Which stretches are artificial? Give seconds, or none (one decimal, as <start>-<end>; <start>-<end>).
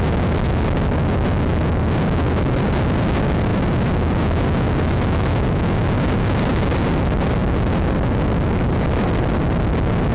none